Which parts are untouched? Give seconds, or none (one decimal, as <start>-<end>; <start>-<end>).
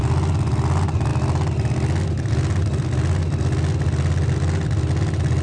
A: 0.0-5.4